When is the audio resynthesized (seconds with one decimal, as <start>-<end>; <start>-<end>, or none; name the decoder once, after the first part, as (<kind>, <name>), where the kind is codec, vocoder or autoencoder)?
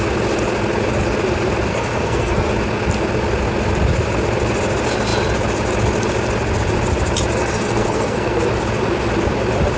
1.7-2.5 (codec, SNAC); 7.4-8.4